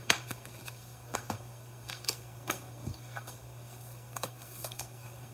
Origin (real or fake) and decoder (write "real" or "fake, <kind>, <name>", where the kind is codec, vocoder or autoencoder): fake, codec, SNAC